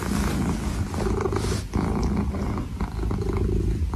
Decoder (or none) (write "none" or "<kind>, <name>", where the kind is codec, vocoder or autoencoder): none